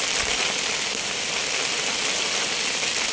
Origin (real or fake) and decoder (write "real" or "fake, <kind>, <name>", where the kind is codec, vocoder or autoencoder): real